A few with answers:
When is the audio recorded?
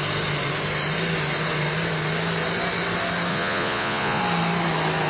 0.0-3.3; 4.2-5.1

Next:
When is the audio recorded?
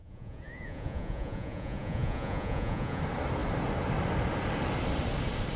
3.0-5.6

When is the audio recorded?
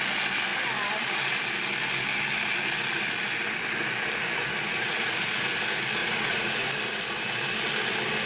0.0-4.7; 5.6-6.0; 6.7-8.3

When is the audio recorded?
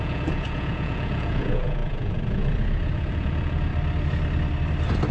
3.7-5.1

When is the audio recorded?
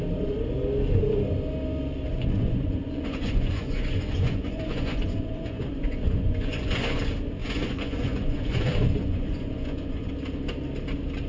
0.0-2.1; 7.0-7.4; 10.1-11.3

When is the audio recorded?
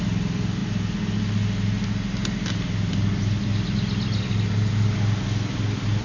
0.0-6.0